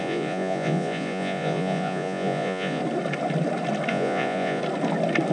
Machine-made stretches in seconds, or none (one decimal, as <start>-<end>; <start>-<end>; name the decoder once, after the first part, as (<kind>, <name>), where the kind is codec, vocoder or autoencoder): 0.0-2.8 (vocoder, Vocos); 3.9-4.6